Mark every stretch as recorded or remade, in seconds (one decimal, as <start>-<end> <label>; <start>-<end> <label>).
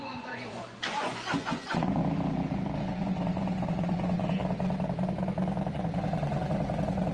0.0-2.0 remade; 2.0-2.8 recorded; 2.8-4.4 remade; 4.4-5.7 recorded; 5.7-7.1 remade